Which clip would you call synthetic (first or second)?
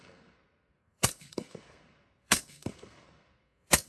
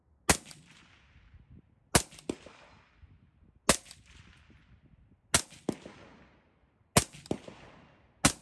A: first